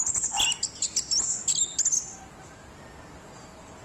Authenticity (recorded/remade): recorded